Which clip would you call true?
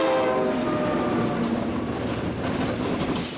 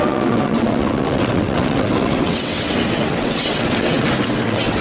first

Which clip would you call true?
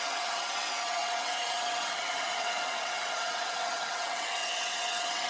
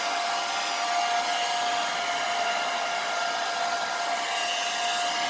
second